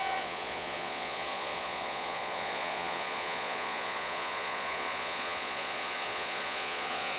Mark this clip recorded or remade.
remade